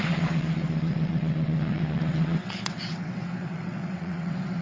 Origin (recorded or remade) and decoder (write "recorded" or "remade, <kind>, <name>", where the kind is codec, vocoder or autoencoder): remade, vocoder, WaveNeXt